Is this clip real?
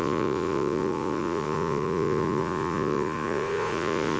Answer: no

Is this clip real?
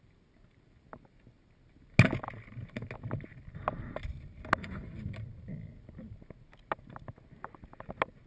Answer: yes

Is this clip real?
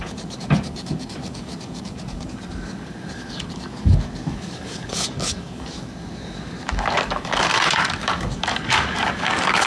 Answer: no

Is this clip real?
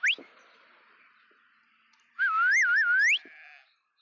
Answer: yes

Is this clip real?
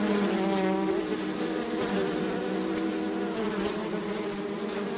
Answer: yes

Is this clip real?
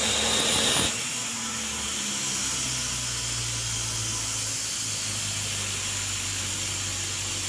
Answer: yes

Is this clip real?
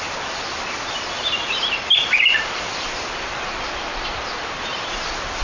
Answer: yes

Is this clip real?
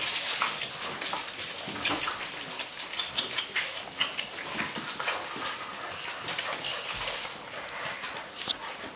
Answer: yes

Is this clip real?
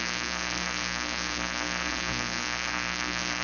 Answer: no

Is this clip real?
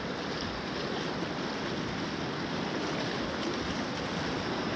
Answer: yes